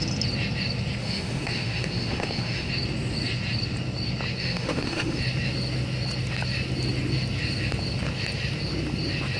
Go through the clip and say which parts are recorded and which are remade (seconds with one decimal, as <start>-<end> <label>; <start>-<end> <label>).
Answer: 0.0-1.0 recorded; 1.0-2.7 remade; 2.7-4.4 recorded; 4.4-5.2 remade; 5.2-9.4 recorded